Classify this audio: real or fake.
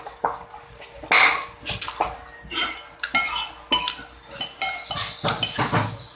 real